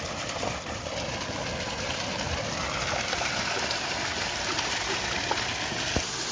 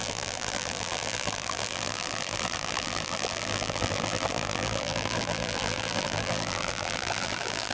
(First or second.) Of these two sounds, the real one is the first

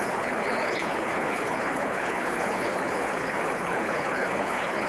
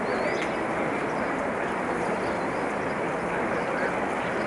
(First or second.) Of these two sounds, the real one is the second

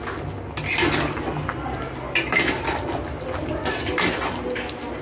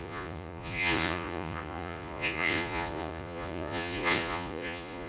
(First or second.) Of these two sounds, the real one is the first